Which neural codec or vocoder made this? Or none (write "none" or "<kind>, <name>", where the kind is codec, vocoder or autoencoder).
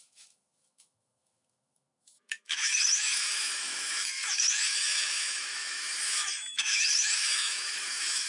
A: autoencoder, DAC-VAE